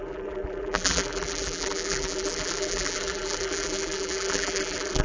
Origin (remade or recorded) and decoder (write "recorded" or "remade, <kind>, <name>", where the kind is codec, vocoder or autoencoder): remade, vocoder, BigVGAN v2